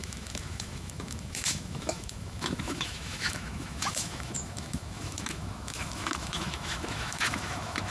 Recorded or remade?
remade